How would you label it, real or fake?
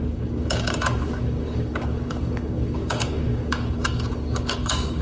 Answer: fake